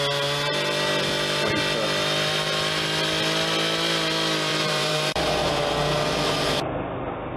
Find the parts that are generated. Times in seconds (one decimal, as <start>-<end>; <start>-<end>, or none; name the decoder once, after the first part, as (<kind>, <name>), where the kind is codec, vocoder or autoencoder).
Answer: 4.5-5.5 (vocoder, BigVGAN v2)